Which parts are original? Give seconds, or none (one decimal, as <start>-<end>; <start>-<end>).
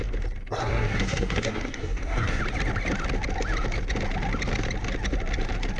0.0-0.6; 2.4-5.8